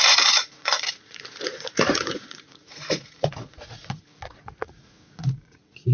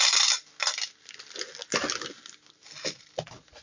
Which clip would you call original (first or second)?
second